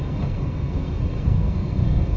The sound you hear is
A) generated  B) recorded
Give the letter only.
A